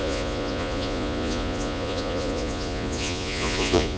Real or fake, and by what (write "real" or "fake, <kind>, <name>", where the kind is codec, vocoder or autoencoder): fake, vocoder, Vocos